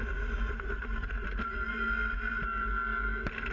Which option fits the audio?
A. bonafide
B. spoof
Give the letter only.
A